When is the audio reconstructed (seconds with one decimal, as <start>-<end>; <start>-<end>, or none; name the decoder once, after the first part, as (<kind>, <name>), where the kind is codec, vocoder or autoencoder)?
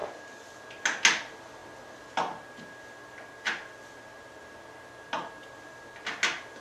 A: 0.0-0.6 (vocoder, BigVGAN v2)